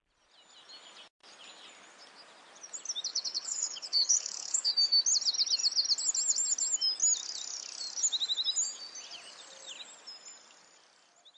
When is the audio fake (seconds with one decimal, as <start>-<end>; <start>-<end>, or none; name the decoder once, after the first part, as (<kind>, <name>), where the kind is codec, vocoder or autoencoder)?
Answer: 3.1-4.7 (codec, HILCodec)